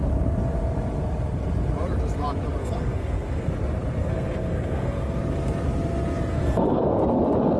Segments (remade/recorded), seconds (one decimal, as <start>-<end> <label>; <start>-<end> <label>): 0.0-2.6 recorded; 2.6-3.5 remade; 3.5-4.0 recorded; 4.0-5.2 remade; 5.2-6.3 recorded; 6.3-7.0 remade; 7.0-7.6 recorded